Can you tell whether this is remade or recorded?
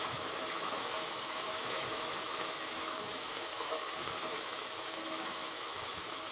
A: remade